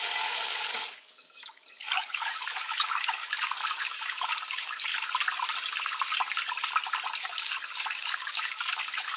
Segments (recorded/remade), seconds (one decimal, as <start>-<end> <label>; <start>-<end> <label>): 0.0-4.9 remade; 4.9-7.2 recorded; 7.2-9.2 remade

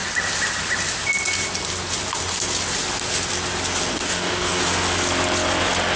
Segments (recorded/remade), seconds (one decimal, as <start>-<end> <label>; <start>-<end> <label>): 0.0-3.9 recorded; 3.9-4.6 remade; 4.6-6.0 recorded

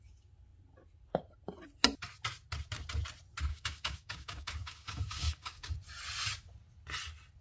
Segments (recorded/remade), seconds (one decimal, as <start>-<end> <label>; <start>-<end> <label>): 0.0-3.5 recorded; 3.5-5.7 remade; 5.7-7.4 recorded

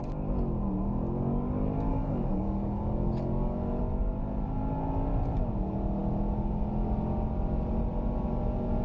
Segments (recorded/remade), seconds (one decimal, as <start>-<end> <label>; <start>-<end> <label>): 0.0-1.9 recorded; 1.9-3.8 remade; 3.8-8.8 recorded

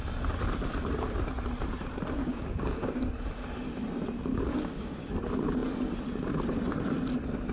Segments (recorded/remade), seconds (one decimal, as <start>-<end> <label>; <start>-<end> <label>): 0.0-2.2 recorded; 2.2-3.1 remade; 3.1-4.3 recorded; 4.3-5.1 remade; 5.1-7.5 recorded

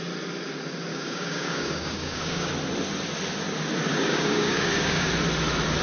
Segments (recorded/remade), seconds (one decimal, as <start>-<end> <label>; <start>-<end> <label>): 0.0-0.9 recorded; 0.9-2.5 remade; 2.5-3.9 recorded; 3.9-5.1 remade; 5.1-5.8 recorded

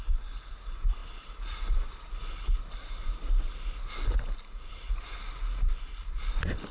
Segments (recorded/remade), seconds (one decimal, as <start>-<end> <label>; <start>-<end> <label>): 0.0-6.7 recorded